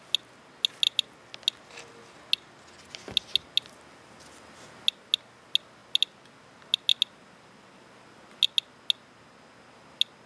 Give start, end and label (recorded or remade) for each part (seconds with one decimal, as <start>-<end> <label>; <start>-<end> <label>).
0.0-10.3 recorded